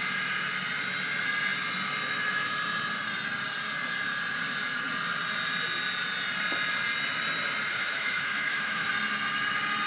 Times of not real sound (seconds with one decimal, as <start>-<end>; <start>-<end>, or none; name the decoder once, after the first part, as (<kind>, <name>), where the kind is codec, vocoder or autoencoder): 7.7-8.9 (autoencoder, DAC-VAE)